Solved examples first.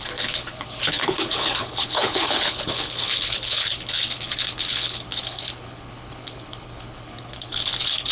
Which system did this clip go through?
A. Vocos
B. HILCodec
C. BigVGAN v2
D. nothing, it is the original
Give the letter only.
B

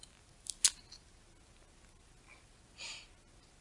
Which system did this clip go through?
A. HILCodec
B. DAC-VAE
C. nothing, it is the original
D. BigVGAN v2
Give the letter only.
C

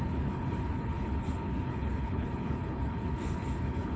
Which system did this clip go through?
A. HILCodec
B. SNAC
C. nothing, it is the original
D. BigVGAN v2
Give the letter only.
A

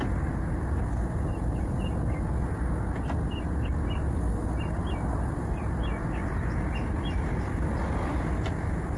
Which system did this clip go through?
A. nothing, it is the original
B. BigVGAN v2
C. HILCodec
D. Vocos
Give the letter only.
A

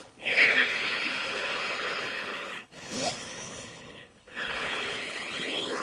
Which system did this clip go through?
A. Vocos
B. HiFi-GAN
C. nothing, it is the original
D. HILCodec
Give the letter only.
D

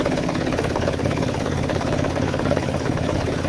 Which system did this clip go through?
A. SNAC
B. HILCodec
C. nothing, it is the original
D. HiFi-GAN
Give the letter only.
B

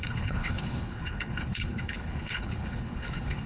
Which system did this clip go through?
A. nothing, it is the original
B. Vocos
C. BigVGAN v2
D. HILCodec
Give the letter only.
D